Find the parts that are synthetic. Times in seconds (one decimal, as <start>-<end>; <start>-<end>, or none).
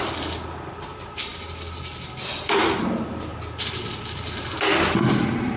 none